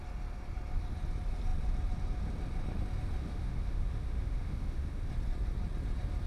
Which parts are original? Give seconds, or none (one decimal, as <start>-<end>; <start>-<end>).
0.0-3.2; 5.1-6.3